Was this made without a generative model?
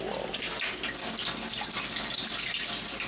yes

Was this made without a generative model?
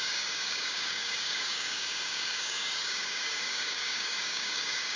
no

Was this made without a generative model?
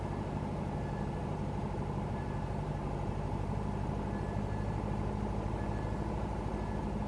yes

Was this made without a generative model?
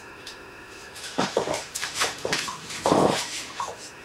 no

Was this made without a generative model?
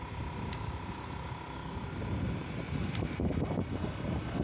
yes